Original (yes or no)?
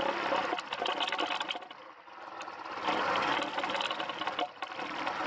yes